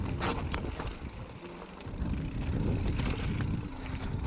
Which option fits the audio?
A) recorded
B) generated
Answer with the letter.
A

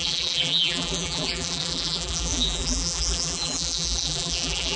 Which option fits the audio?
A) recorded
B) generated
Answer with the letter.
B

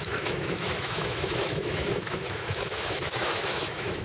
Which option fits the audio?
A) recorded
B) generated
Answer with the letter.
B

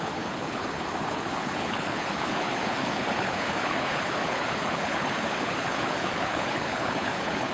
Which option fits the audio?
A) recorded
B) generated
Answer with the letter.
B